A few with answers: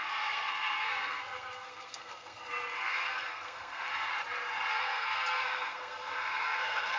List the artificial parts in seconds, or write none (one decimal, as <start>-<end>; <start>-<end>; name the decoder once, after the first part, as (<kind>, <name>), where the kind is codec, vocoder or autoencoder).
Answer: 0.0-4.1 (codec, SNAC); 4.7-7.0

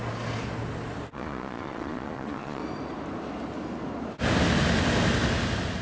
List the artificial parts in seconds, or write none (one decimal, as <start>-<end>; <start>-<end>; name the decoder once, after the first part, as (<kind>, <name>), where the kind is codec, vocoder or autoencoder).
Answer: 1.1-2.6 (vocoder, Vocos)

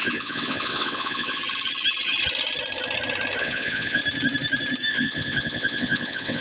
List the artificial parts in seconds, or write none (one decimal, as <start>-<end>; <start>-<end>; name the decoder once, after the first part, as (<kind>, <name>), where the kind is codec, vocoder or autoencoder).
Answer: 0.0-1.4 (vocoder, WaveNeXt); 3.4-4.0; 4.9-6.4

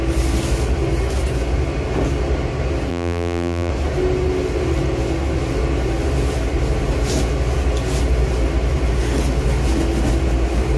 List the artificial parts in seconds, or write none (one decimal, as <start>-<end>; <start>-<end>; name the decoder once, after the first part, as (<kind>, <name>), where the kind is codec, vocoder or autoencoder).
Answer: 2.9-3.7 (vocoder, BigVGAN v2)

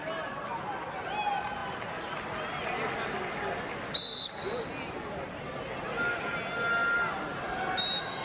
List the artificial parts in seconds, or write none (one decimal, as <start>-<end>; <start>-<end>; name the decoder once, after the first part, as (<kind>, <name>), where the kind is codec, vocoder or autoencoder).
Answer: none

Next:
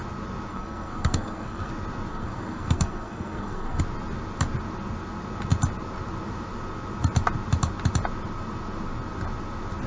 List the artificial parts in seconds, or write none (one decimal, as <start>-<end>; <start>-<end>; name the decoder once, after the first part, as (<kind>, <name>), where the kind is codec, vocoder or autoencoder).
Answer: 0.5-1.7 (codec, SNAC); 2.1-3.8

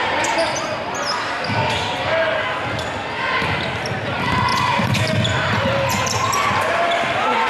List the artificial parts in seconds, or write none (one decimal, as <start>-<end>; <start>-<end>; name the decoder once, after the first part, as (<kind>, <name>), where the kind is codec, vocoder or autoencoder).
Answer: 4.5-6.6 (vocoder, BigVGAN v2)